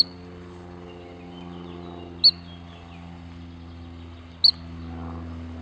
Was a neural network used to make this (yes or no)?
no